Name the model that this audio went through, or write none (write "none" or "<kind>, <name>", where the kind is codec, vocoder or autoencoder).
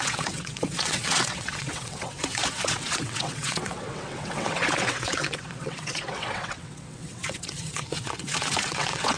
vocoder, WaveNeXt